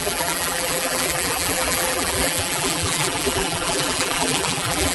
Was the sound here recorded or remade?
remade